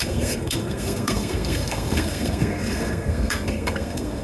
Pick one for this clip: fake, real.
fake